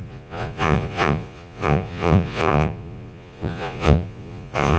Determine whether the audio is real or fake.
fake